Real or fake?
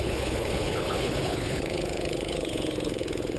fake